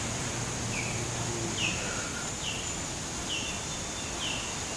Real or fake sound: real